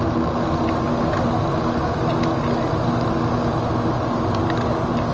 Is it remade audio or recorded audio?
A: recorded